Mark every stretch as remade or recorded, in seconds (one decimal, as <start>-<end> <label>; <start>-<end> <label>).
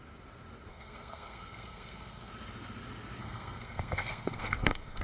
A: 0.0-0.7 recorded; 0.7-2.3 remade; 2.3-3.2 recorded; 3.2-5.0 remade